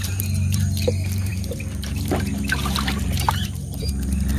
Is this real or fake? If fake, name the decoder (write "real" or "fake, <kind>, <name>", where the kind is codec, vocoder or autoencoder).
fake, vocoder, BigVGAN v2